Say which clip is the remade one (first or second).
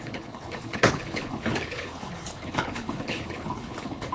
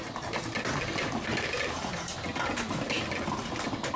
first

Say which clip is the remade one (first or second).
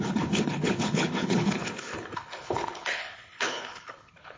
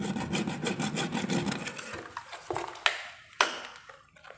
first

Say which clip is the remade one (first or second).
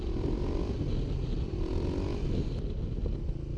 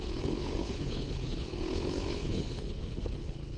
second